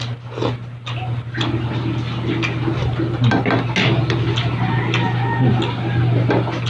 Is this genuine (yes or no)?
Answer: yes